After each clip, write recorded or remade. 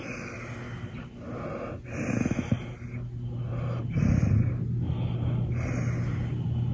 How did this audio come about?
recorded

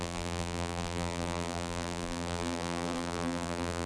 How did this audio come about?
remade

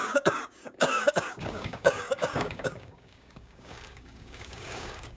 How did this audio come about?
remade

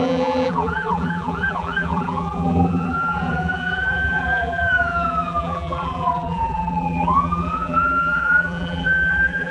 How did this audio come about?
remade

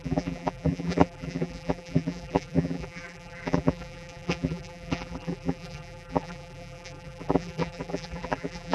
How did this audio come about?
remade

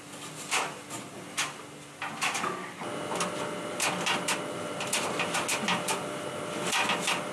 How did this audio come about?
recorded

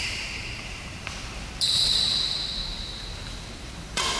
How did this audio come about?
remade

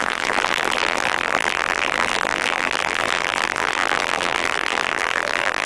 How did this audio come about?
remade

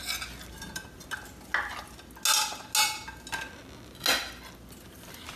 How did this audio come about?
recorded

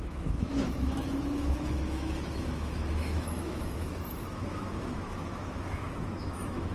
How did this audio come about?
remade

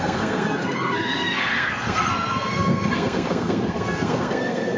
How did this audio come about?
remade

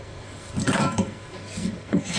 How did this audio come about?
remade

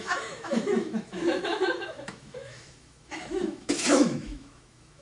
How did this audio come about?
remade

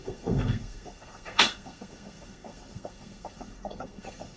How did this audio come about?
remade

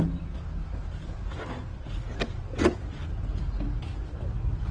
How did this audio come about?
recorded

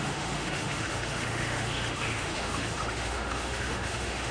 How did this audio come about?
remade